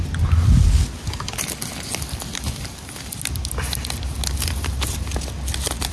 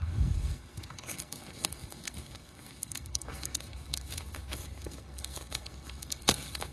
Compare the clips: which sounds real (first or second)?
first